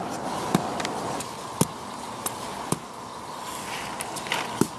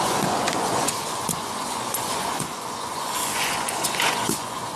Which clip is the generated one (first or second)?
second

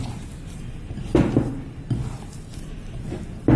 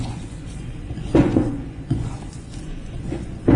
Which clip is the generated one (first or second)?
second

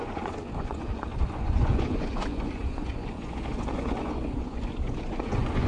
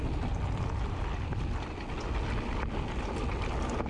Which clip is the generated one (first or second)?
first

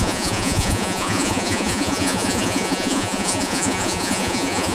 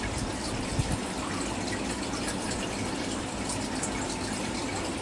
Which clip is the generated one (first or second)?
first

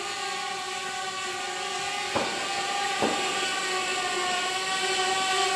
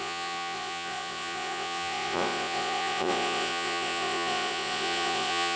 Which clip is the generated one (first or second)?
second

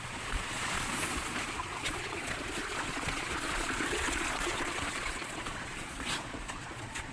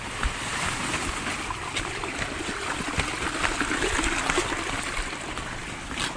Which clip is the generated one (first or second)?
first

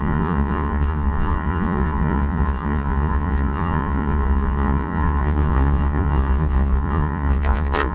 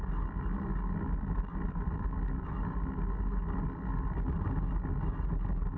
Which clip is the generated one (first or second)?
first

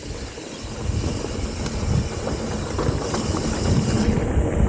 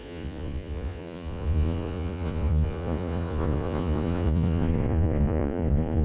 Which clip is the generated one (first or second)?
second